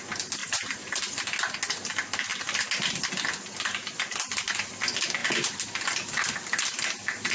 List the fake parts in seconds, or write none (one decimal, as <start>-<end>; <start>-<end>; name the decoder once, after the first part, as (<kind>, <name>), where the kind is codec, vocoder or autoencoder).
0.4-1.0 (vocoder, BigVGAN v2)